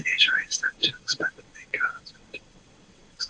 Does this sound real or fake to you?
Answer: fake